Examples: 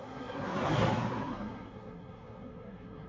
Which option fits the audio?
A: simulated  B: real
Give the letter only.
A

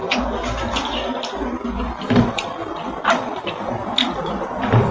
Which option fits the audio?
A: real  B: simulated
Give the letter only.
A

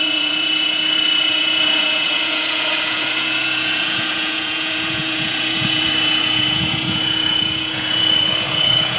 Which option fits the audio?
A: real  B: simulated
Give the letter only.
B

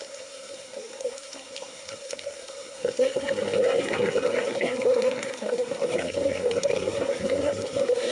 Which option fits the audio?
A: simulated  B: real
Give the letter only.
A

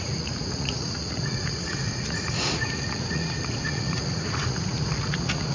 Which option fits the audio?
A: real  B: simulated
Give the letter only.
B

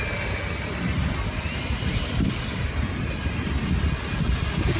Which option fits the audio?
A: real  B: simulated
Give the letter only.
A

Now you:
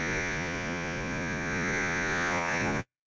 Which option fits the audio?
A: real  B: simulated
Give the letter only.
B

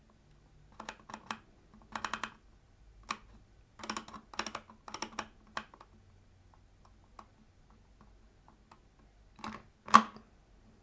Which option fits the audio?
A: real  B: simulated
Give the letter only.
A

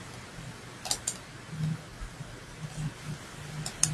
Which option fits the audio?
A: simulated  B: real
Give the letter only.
B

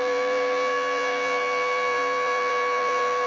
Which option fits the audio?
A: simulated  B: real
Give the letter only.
A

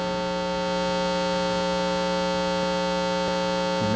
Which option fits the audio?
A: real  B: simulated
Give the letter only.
A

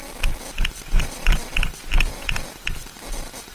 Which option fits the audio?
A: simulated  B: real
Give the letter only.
A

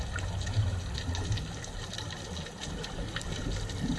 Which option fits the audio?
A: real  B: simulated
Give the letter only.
A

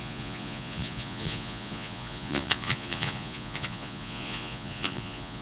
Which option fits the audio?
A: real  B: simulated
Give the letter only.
B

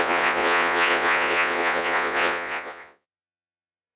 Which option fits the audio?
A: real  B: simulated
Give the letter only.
B